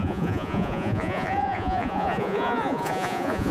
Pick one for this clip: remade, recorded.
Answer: remade